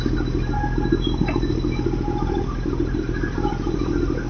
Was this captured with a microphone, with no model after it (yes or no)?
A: yes